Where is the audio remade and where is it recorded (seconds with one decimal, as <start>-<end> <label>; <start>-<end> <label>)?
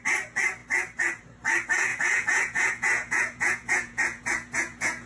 0.0-1.9 recorded; 1.9-5.1 remade